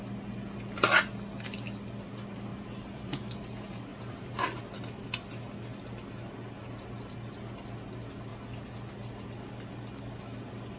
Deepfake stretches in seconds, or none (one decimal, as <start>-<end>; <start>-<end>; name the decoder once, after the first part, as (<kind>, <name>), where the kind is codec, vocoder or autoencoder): 2.5-3.4 (vocoder, BigVGAN v2); 3.9-4.6